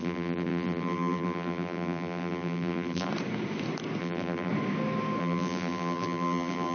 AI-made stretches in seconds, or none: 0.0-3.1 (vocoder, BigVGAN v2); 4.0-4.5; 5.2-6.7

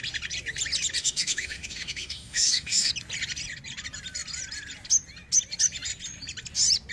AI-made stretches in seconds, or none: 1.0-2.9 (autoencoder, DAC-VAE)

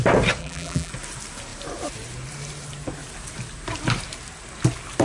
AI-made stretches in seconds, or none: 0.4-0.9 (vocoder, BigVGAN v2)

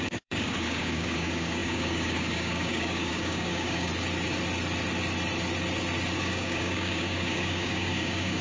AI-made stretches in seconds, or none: 0.0-3.9 (codec, DAC); 6.2-8.4

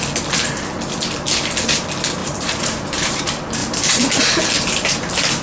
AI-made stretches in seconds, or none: 2.2-3.2 (vocoder, BigVGAN v2); 3.6-4.2

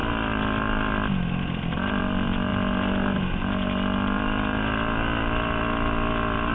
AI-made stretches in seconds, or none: none

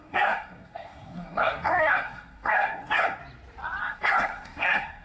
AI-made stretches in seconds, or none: 0.0-3.2 (codec, SNAC); 3.8-5.0